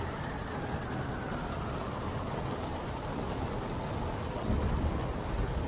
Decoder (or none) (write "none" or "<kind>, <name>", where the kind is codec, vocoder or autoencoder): none